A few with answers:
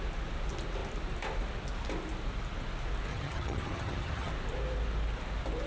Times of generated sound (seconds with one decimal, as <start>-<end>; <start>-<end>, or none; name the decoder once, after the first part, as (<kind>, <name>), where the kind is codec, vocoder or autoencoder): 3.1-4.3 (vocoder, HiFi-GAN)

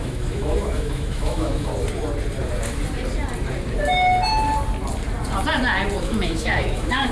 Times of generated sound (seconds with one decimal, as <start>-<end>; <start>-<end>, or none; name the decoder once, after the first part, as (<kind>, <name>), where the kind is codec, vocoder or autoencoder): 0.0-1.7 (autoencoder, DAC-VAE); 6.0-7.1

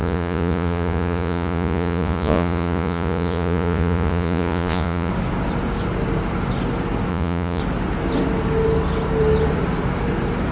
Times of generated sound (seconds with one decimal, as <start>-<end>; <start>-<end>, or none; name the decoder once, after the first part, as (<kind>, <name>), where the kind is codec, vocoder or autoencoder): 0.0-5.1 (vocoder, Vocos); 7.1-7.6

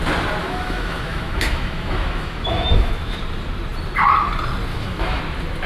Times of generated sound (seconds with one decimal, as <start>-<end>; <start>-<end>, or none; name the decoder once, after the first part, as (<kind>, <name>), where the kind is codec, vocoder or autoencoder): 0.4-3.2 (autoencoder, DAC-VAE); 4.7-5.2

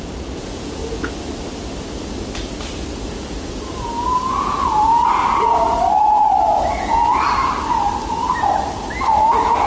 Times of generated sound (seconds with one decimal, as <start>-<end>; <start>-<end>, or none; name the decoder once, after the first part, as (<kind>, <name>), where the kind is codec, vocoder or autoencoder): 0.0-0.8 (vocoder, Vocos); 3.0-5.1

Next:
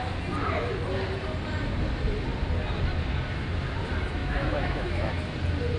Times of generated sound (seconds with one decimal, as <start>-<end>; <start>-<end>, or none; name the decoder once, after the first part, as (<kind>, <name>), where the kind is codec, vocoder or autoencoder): 4.2-5.1 (autoencoder, DAC-VAE)

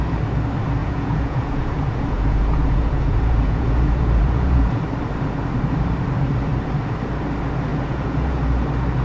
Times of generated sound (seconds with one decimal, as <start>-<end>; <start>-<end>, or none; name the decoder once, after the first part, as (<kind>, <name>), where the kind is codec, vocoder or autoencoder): 0.8-4.8 (vocoder, Vocos); 7.7-8.4

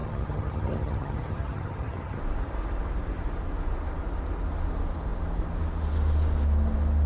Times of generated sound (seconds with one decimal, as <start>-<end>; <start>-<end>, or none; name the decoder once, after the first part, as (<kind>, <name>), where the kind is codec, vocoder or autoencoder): 0.0-2.2 (vocoder, HiFi-GAN)